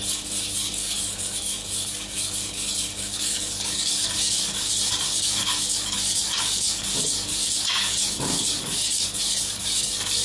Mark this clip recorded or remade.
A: remade